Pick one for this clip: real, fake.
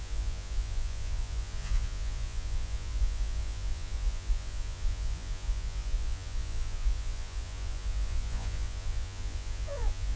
fake